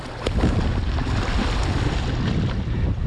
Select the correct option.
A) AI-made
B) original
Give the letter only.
B